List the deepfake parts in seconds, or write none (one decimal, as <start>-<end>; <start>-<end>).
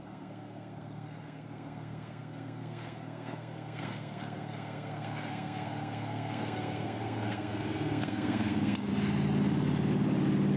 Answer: 0.0-8.9